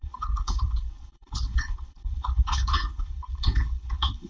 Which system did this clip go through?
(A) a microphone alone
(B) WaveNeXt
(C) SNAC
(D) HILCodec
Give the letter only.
D